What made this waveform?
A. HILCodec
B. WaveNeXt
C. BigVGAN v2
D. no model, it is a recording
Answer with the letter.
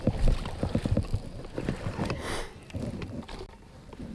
D